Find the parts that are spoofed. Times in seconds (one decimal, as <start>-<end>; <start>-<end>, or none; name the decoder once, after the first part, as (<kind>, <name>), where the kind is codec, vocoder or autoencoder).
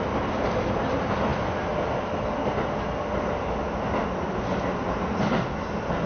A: none